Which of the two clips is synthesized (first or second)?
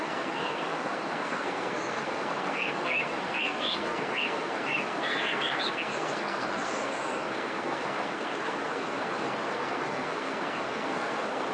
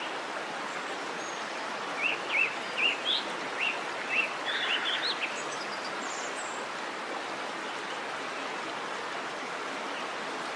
first